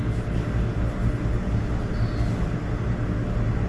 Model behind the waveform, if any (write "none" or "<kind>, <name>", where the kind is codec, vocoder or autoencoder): none